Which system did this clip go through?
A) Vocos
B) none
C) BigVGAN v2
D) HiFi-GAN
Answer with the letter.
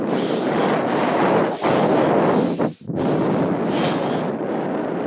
B